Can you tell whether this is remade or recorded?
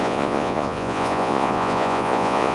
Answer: remade